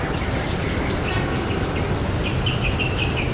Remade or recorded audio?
recorded